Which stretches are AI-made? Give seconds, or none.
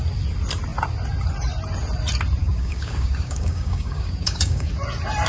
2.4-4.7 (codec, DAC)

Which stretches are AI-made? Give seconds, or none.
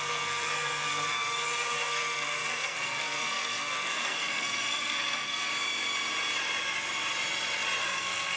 0.0-5.5 (codec, SNAC); 7.8-8.4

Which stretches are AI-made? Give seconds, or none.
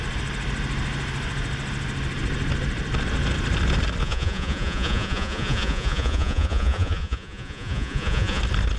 4.0-8.4 (vocoder, Vocos)